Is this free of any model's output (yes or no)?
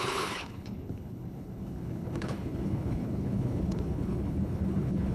no